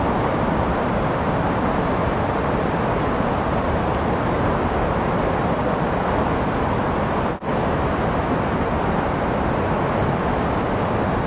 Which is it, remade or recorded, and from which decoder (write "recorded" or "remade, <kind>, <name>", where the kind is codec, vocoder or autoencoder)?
recorded